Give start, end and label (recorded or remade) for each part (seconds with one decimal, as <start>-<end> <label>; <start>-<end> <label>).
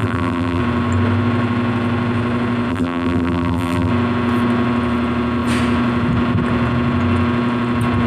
0.0-0.6 remade; 0.6-2.7 recorded; 2.7-3.9 remade; 3.9-8.1 recorded